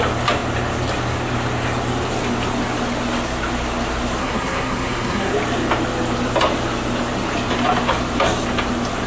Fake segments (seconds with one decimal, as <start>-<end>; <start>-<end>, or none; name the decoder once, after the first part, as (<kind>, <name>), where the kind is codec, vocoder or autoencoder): 4.2-5.3 (codec, SNAC)